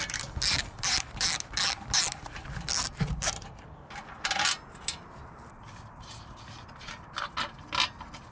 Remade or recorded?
recorded